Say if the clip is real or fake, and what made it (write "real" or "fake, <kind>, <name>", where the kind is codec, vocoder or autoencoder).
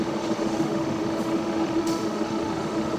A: fake, autoencoder, DAC-VAE